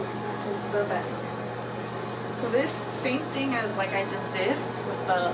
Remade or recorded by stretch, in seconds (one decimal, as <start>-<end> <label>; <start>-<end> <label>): 0.0-0.6 remade; 0.6-5.3 recorded